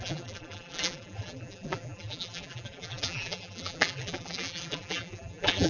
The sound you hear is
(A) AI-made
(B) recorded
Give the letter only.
A